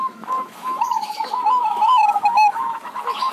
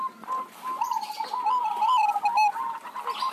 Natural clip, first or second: second